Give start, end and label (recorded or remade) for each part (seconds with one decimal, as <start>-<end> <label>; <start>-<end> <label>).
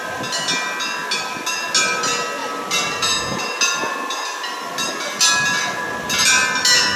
0.0-7.0 recorded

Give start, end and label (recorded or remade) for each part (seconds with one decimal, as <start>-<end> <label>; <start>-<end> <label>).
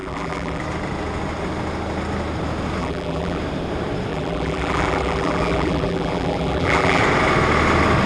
0.0-0.6 remade; 0.6-2.8 recorded; 2.8-3.4 remade; 3.4-4.1 recorded; 4.1-7.0 remade; 7.0-8.1 recorded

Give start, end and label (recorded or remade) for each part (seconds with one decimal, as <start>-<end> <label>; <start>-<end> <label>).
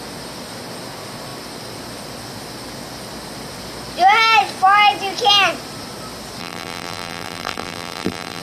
0.0-6.4 recorded; 6.4-8.4 remade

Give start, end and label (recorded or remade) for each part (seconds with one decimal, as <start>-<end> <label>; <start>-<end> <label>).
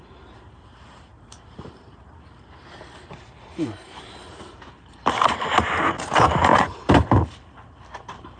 0.0-8.4 remade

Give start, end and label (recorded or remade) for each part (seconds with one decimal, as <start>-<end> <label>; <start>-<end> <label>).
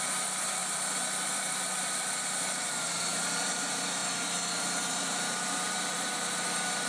0.0-4.0 remade; 4.0-4.6 recorded; 4.6-6.9 remade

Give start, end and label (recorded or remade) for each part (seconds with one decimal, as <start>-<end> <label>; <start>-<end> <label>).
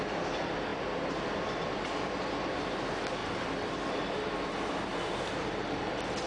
0.0-0.7 recorded; 0.7-2.6 remade; 2.6-3.2 recorded; 3.2-6.3 remade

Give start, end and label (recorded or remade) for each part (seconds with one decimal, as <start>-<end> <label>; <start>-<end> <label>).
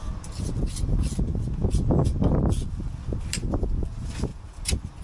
0.0-5.0 recorded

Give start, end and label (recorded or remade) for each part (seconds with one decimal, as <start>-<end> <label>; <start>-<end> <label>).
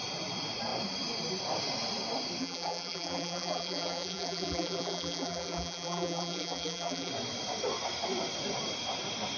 0.0-2.4 recorded; 2.4-7.1 remade; 7.1-9.4 recorded